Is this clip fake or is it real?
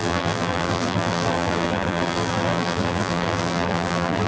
fake